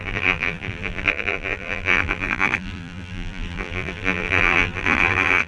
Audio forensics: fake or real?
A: fake